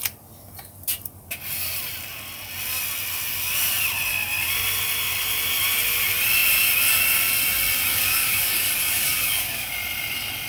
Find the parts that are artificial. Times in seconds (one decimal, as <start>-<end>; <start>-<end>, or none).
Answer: 7.9-9.7